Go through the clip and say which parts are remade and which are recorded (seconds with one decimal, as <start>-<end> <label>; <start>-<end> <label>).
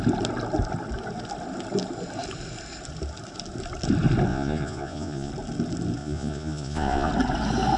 0.0-4.3 recorded; 4.3-5.3 remade; 5.3-6.0 recorded; 6.0-7.1 remade; 7.1-7.8 recorded